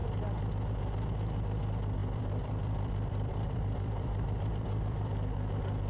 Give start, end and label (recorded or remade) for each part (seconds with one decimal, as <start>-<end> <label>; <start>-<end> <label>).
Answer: 0.0-2.0 recorded; 2.0-5.2 remade; 5.2-5.9 recorded